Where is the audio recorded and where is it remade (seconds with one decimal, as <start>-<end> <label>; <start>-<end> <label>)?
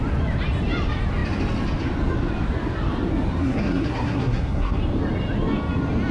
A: 0.0-3.4 recorded; 3.4-4.8 remade; 4.8-6.1 recorded